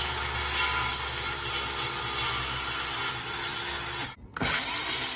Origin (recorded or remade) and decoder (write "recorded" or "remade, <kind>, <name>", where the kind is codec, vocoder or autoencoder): recorded